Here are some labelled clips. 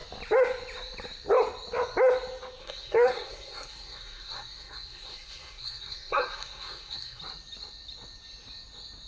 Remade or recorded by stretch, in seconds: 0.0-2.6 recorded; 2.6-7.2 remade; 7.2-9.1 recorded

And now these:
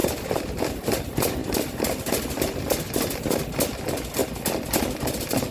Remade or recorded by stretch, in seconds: 0.0-0.7 remade; 0.7-1.4 recorded; 1.4-3.4 remade; 3.4-5.5 recorded

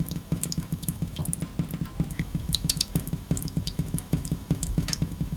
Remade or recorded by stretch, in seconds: 0.0-1.2 remade; 1.2-2.1 recorded; 2.1-5.4 remade

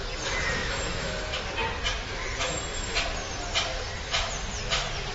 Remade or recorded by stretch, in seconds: 0.0-0.6 recorded; 0.6-1.4 remade; 1.4-5.1 recorded

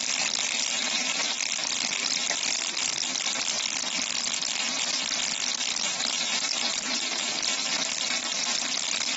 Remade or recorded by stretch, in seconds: 0.0-0.7 recorded; 0.7-1.7 remade; 1.7-4.6 recorded; 4.6-5.2 remade; 5.2-5.7 recorded; 5.7-8.7 remade; 8.7-9.2 recorded

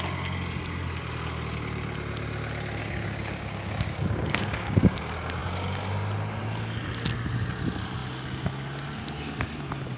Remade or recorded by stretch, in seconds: 0.0-2.8 recorded; 2.8-4.8 remade; 4.8-10.0 recorded

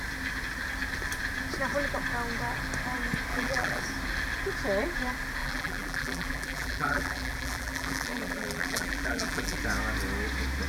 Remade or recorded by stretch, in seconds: 0.0-3.3 recorded; 3.3-3.8 remade; 3.8-5.4 recorded; 5.4-9.6 remade; 9.6-10.7 recorded

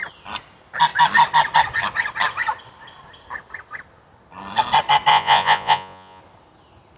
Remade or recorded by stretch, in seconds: 0.0-5.1 recorded; 5.1-6.2 remade; 6.2-7.0 recorded